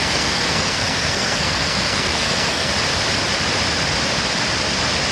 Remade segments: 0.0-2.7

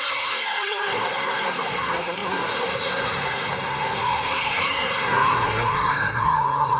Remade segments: 0.0-6.8

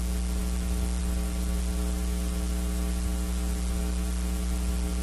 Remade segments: none

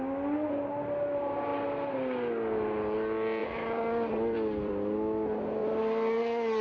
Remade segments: 3.4-4.7; 5.6-6.6

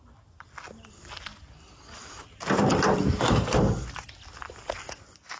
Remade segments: none

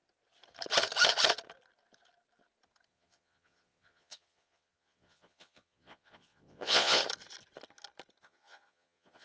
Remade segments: 2.9-7.0; 8.2-9.2